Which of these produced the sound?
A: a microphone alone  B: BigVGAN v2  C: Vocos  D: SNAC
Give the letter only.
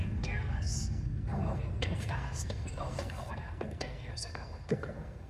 D